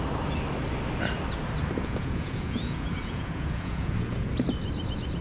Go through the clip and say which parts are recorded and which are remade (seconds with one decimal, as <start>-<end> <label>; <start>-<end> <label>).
0.0-1.8 recorded; 1.8-4.3 remade; 4.3-5.2 recorded